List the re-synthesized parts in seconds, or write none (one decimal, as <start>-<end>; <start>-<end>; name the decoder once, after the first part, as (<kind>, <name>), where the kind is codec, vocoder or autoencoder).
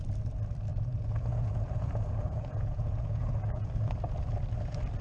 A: 0.7-3.7 (vocoder, Vocos)